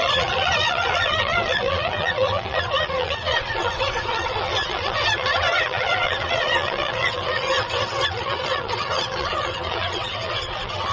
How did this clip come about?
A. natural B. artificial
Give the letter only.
B